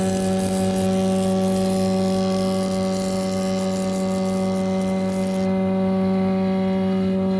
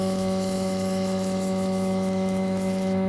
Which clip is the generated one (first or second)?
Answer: second